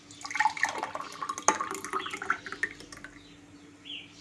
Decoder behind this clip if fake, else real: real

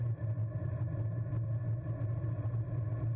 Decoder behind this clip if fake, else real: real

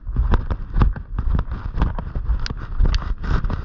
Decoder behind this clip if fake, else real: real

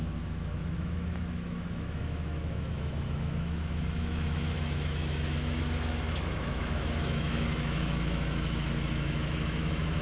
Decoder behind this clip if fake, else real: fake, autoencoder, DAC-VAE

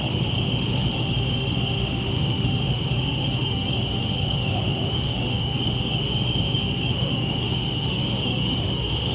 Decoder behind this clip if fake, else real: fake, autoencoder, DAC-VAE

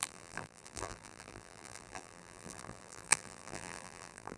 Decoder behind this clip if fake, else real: fake, vocoder, BigVGAN v2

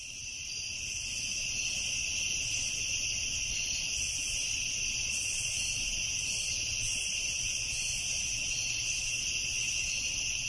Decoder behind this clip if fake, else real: real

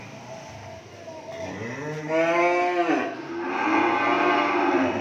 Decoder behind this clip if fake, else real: real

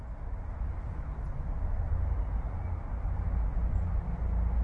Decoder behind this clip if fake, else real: real